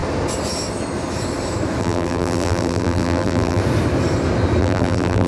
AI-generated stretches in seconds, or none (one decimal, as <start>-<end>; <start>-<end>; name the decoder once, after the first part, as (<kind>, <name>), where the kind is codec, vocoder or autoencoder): 1.8-3.6 (vocoder, BigVGAN v2); 4.6-5.3